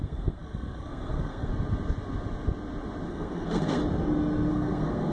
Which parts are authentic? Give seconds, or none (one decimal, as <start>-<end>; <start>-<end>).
1.5-3.1; 3.8-4.5